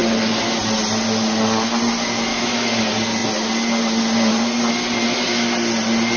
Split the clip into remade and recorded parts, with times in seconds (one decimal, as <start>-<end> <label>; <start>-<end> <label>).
0.0-2.3 recorded; 2.3-2.8 remade; 2.8-6.2 recorded